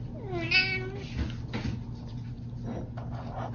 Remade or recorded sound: recorded